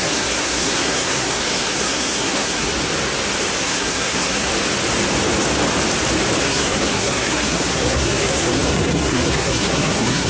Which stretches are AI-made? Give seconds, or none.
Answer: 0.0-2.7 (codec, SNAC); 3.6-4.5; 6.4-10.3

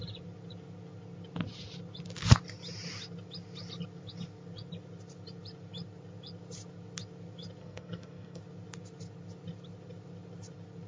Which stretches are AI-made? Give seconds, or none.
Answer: 7.6-8.4 (codec, SNAC)

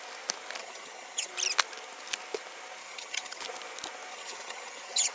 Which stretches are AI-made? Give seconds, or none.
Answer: 0.6-1.3 (vocoder, HiFi-GAN); 2.8-3.4; 4.1-5.1